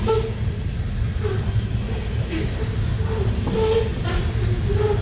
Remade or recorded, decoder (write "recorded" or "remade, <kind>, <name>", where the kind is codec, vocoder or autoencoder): recorded